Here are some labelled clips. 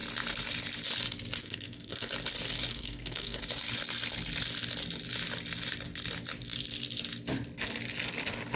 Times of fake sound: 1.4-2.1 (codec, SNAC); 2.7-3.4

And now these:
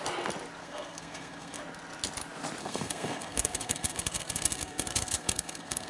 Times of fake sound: 0.6-1.6 (codec, SNAC); 2.6-5.9